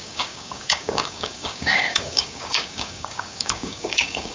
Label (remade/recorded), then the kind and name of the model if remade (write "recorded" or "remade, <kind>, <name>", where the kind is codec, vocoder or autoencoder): remade, codec, DAC